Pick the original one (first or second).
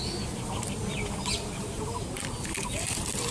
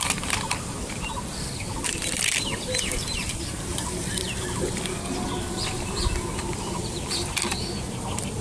first